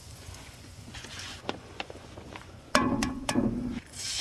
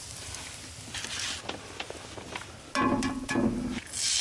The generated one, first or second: first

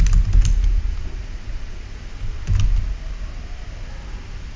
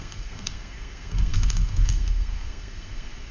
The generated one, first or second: second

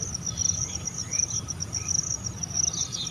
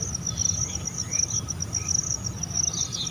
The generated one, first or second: first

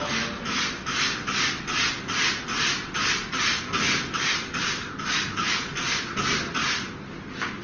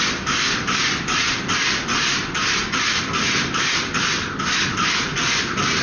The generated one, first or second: second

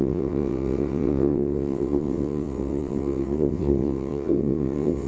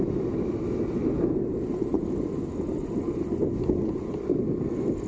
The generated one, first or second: first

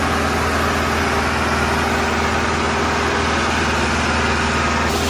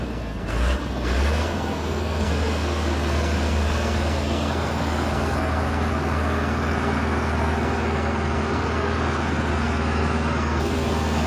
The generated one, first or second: second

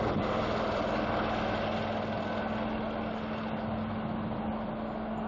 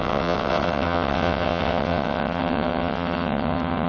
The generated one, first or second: second